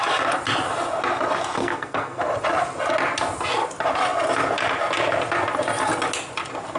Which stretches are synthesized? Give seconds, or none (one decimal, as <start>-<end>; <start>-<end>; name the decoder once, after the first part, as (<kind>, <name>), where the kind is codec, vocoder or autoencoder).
1.6-2.2 (codec, SNAC)